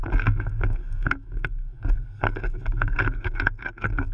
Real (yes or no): no